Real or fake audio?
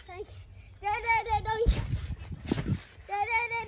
real